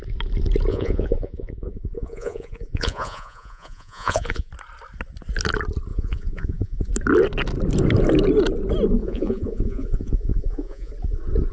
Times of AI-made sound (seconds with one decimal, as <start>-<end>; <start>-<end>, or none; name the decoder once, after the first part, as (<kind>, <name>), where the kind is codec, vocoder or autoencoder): 0.7-4.5 (vocoder, Vocos); 5.9-6.9; 9.0-10.9